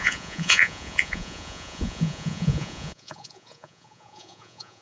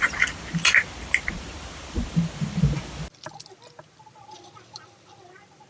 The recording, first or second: second